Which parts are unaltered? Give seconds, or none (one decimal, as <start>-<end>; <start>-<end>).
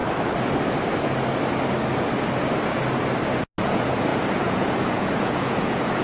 0.0-3.6